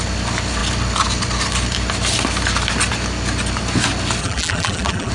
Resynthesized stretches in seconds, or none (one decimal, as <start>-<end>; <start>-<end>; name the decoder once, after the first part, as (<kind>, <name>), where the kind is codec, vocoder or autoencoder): 4.2-5.1 (vocoder, BigVGAN v2)